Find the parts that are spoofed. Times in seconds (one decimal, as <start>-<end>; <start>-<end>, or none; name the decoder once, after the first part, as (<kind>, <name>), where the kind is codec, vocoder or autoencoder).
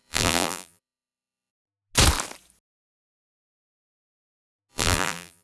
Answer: 0.0-1.5 (vocoder, BigVGAN v2); 4.7-5.4